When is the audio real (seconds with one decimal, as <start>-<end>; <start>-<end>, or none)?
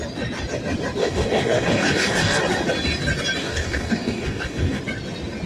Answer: 0.0-1.0; 2.4-3.4; 4.8-5.5